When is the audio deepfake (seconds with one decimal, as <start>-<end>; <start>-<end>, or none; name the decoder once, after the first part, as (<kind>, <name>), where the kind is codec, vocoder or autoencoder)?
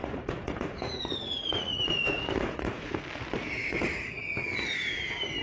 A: 0.0-3.0 (vocoder, Vocos); 3.6-4.2